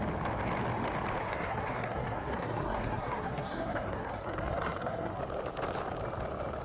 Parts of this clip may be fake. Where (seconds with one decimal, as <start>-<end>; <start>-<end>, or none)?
1.2-5.2